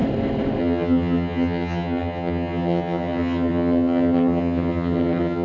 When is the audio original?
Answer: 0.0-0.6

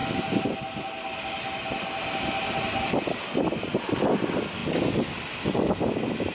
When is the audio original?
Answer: 0.0-6.3

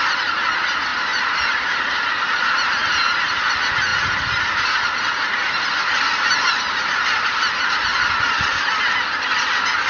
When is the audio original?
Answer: 0.0-9.9

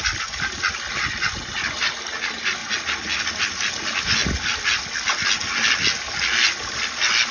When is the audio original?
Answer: 0.0-7.3

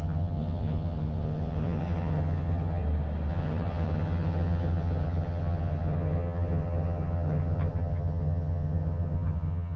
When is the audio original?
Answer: 2.8-3.3

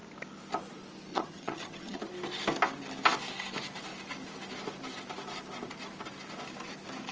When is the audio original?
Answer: 0.0-1.1; 2.0-7.1

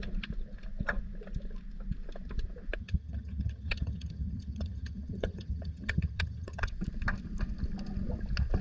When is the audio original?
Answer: 0.0-2.8; 6.7-8.6